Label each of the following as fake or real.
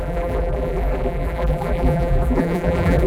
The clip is fake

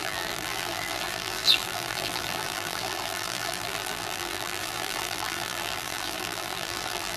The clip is fake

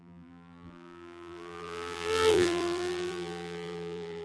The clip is fake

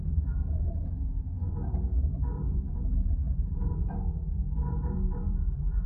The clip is fake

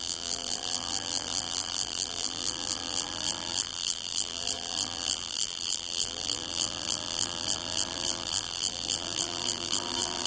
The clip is fake